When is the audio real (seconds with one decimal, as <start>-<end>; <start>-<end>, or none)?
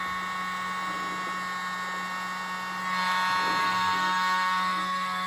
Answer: 0.0-3.6